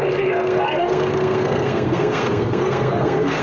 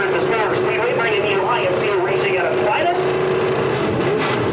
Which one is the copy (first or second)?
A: first